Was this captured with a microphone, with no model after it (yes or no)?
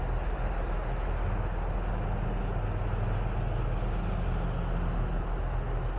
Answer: yes